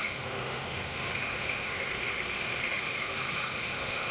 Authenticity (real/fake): fake